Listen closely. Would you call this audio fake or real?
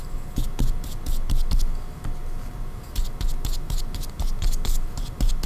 real